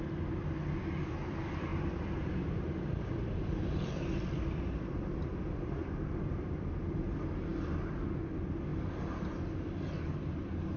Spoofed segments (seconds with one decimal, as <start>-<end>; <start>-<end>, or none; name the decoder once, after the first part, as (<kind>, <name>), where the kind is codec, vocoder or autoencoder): 1.7-5.9 (vocoder, BigVGAN v2); 8.7-9.3